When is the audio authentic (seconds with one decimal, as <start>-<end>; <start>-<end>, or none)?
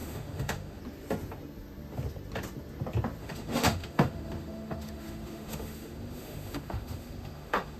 0.8-3.2